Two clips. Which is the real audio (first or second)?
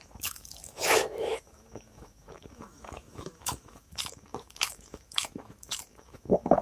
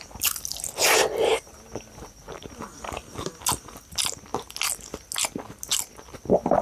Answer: second